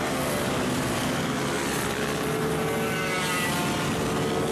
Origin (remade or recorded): recorded